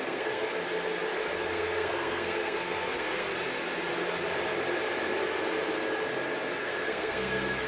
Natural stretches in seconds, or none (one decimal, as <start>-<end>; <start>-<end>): 0.4-1.5; 3.3-6.6